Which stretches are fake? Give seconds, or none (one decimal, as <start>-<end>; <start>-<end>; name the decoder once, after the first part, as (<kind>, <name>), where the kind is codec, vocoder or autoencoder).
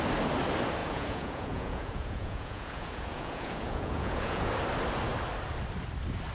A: 0.8-4.5 (vocoder, Vocos)